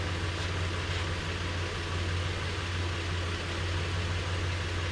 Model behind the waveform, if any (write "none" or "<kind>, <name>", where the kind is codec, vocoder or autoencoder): none